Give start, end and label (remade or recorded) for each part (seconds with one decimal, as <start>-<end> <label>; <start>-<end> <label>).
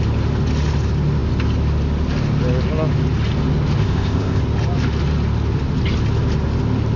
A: 0.0-3.8 recorded; 3.8-4.4 remade; 4.4-7.0 recorded